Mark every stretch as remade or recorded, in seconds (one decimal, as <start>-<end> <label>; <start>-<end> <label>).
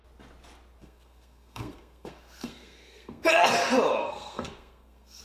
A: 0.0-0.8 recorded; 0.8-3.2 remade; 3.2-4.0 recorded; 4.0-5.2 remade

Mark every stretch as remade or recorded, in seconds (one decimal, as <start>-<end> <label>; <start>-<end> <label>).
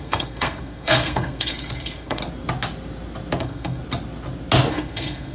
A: 0.0-2.2 remade; 2.2-3.4 recorded; 3.4-3.8 remade; 3.8-4.7 recorded; 4.7-5.3 remade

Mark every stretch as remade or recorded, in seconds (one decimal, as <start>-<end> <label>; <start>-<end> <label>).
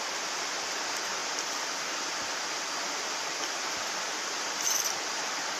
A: 0.0-5.6 recorded